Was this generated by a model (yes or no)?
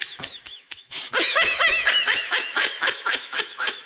yes